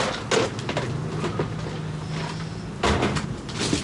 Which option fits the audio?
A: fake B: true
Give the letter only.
B